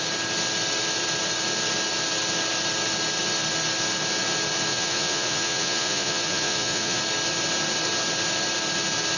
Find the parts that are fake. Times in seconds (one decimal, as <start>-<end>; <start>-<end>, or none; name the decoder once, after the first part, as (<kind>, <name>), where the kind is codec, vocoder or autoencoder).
4.7-7.0 (vocoder, Vocos)